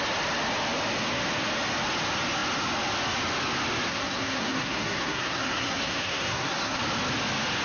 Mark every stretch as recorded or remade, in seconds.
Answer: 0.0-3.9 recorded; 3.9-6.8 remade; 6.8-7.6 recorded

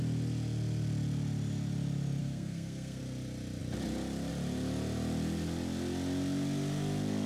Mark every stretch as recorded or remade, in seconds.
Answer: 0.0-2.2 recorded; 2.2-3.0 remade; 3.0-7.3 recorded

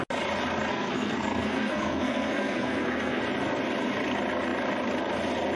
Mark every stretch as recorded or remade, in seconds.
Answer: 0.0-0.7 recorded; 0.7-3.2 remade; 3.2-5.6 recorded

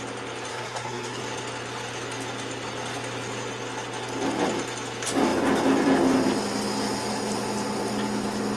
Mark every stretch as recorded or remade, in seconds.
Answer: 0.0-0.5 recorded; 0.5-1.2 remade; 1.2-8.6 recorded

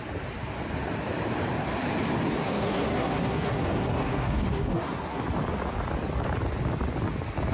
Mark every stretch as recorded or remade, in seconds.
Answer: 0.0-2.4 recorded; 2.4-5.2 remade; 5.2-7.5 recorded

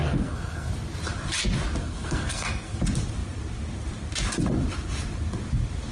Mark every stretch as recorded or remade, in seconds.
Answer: 0.0-0.7 remade; 0.7-1.8 recorded; 1.8-2.8 remade; 2.8-5.9 recorded

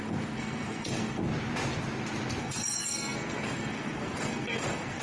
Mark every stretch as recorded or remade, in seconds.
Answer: 0.0-1.2 remade; 1.2-2.4 recorded; 2.4-5.0 remade